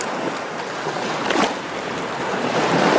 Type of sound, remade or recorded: recorded